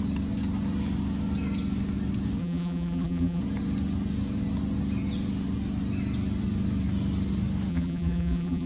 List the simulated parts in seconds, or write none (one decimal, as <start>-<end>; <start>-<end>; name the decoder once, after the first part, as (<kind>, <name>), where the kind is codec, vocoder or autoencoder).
2.4-3.4 (vocoder, BigVGAN v2); 7.7-8.7